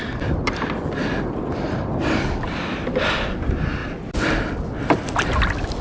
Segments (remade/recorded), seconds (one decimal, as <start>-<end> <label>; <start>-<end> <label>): 0.0-5.8 recorded